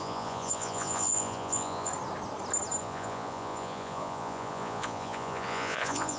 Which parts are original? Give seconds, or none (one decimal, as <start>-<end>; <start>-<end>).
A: 1.9-2.8